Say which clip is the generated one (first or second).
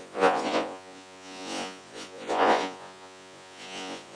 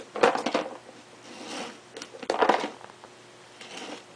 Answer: first